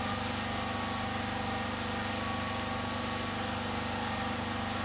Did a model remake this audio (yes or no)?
no